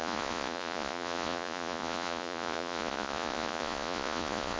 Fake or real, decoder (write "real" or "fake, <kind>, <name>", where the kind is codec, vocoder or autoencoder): fake, vocoder, Vocos